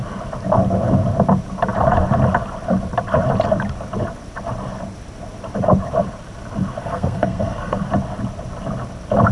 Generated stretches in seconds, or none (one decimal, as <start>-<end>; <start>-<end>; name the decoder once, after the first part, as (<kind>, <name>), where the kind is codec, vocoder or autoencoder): 6.8-7.8 (codec, SNAC)